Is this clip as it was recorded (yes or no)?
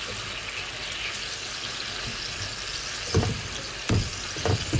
yes